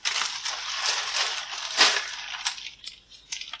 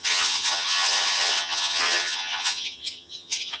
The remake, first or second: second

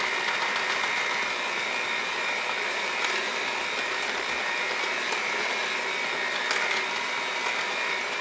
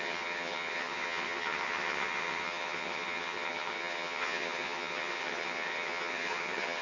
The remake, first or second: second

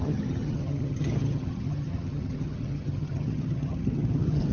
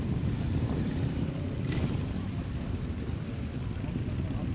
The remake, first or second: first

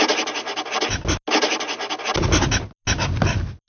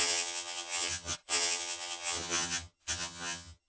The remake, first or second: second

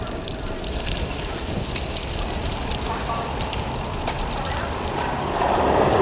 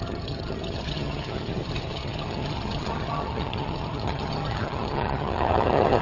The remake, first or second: second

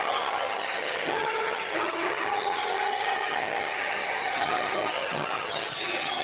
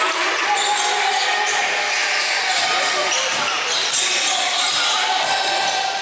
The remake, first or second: first